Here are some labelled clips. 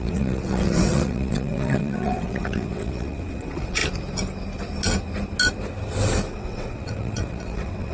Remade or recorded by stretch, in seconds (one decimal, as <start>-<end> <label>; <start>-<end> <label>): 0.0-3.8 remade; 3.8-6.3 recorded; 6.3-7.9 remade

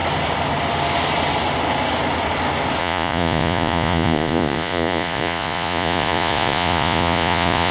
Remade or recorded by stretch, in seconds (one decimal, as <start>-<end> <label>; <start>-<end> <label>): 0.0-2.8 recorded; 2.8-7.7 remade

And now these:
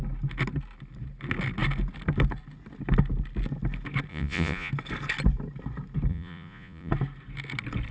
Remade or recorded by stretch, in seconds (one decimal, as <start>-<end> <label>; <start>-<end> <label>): 0.0-4.1 recorded; 4.1-4.7 remade; 4.7-6.1 recorded; 6.1-6.9 remade; 6.9-7.9 recorded

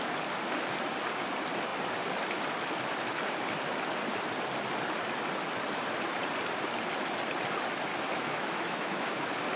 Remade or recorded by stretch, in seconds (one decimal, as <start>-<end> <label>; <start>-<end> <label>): 0.0-7.9 recorded; 7.9-9.1 remade; 9.1-9.6 recorded